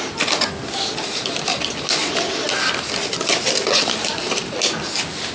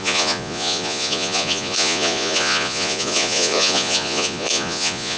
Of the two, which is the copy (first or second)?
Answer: second